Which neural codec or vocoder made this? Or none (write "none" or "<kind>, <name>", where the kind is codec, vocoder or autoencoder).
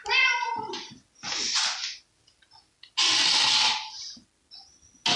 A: none